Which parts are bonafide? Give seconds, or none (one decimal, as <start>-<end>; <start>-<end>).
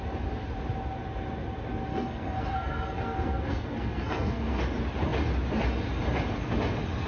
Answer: 0.0-1.9; 4.6-7.1